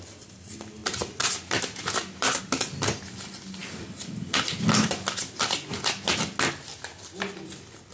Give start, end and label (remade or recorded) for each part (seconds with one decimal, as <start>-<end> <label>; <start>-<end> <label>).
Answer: 0.0-0.8 recorded; 0.8-2.4 remade; 2.4-7.9 recorded